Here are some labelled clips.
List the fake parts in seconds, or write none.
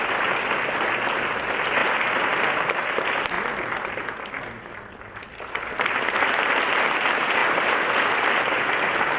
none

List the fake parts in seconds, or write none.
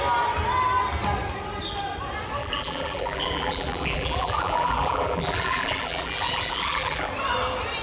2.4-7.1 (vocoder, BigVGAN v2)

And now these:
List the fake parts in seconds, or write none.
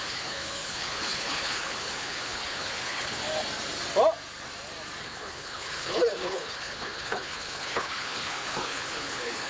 0.0-3.2 (codec, HILCodec); 5.0-9.5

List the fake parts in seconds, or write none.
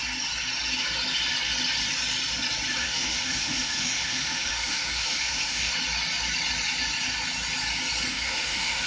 2.8-5.7 (autoencoder, DAC-VAE); 8.1-8.9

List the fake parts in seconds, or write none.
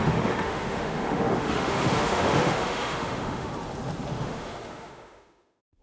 0.0-3.5 (autoencoder, DAC-VAE); 4.1-5.8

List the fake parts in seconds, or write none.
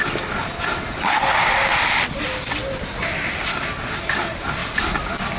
4.6-5.4 (vocoder, BigVGAN v2)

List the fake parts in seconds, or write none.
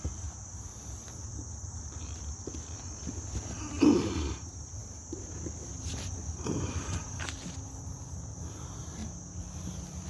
1.3-2.2 (vocoder, BigVGAN v2); 4.8-7.2